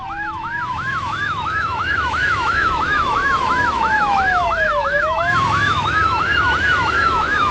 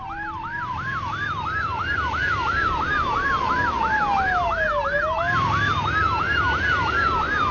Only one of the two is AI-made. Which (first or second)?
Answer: first